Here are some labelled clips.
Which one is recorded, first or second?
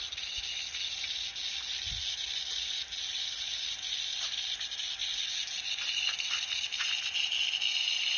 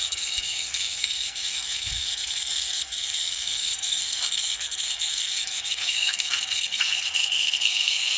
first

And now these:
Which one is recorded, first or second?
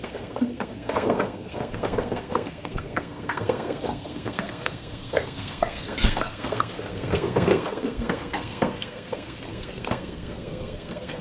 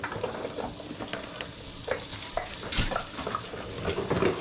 second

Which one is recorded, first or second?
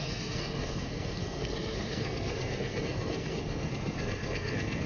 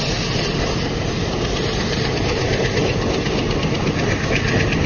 second